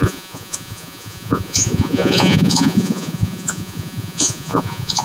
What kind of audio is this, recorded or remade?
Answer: remade